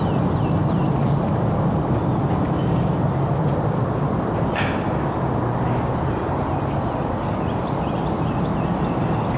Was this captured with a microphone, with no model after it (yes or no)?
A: yes